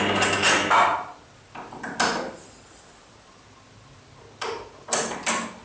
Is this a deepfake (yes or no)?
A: no